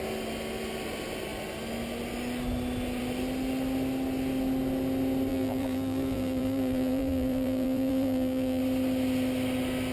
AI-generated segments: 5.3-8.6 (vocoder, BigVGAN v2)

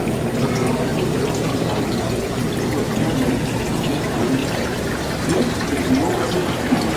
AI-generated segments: 0.9-1.8 (vocoder, BigVGAN v2); 4.4-5.8